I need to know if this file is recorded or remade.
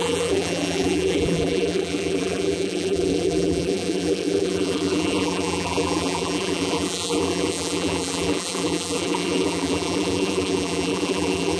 remade